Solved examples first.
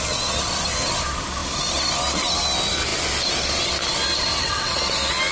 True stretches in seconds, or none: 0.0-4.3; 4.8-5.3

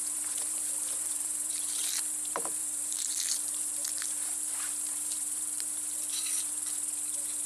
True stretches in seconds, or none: 1.9-2.6; 6.5-7.5

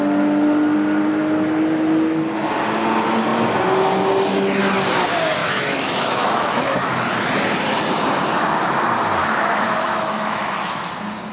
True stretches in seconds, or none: 0.0-5.4; 6.9-9.2; 10.9-11.3

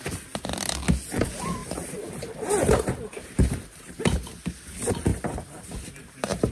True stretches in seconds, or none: 0.0-1.6; 4.0-5.1

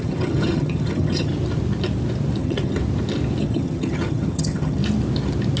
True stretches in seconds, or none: 1.3-2.4; 2.8-3.4; 4.8-5.6

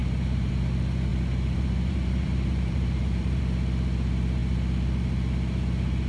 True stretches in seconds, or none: 0.5-1.1; 3.4-6.1

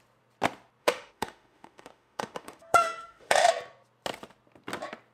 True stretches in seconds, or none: 0.0-0.8; 3.5-5.1